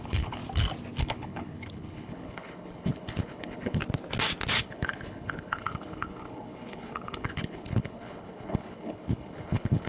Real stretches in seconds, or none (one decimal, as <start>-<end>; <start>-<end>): 0.4-1.0; 3.8-4.6